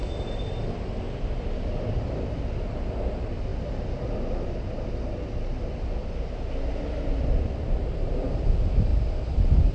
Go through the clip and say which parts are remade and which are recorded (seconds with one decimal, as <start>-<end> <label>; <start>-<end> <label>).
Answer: 0.0-9.7 recorded